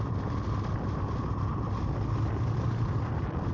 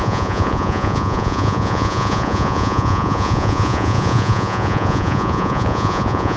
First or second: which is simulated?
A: second